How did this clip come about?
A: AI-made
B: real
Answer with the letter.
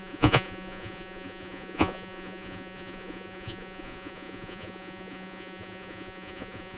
A